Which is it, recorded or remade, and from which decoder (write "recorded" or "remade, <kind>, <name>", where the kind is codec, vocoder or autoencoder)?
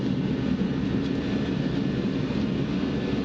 recorded